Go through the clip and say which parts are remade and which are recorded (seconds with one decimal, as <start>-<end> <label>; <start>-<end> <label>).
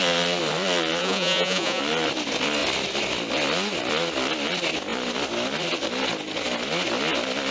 0.0-1.0 recorded; 1.0-1.8 remade; 1.8-7.5 recorded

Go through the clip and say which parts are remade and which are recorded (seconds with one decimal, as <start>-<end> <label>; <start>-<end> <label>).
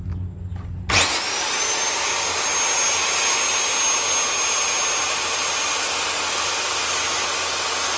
0.0-8.0 recorded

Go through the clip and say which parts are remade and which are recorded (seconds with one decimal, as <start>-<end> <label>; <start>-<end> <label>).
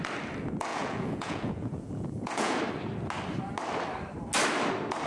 0.0-0.7 recorded; 0.7-2.6 remade; 2.6-5.1 recorded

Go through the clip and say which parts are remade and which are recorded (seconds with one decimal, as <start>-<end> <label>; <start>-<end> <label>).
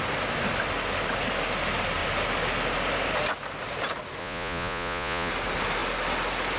0.0-4.2 recorded; 4.2-5.3 remade; 5.3-6.6 recorded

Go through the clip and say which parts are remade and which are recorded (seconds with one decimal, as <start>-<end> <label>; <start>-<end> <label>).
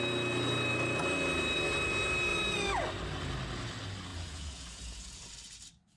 0.0-4.1 recorded; 4.1-5.3 remade; 5.3-6.0 recorded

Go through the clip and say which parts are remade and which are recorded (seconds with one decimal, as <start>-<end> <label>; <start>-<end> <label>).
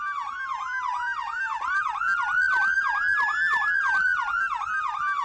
0.0-5.2 recorded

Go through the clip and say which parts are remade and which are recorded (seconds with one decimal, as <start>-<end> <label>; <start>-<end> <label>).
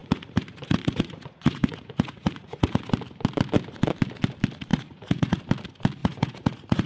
0.0-2.8 remade; 2.8-4.7 recorded; 4.7-5.4 remade; 5.4-6.0 recorded; 6.0-6.9 remade